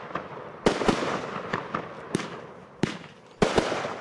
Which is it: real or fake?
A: real